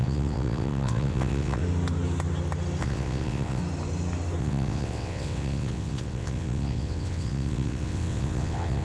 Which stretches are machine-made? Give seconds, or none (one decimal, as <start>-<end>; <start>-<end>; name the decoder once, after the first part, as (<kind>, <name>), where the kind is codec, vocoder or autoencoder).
0.0-1.6 (vocoder, WaveNeXt); 2.8-3.6; 4.4-8.8